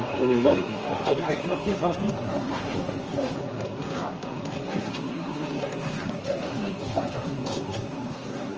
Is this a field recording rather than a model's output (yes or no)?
no